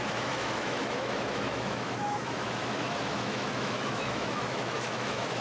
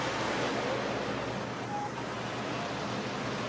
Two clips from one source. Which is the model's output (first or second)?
first